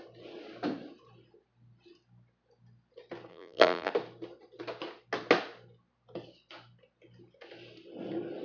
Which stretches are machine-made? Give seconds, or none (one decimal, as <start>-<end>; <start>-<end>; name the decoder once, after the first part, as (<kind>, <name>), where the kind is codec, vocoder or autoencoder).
3.3-3.9 (vocoder, BigVGAN v2)